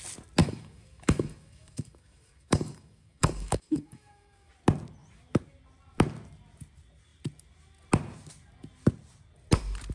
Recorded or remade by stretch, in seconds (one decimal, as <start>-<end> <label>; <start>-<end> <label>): 0.0-0.4 recorded; 0.4-4.5 remade; 4.5-9.9 recorded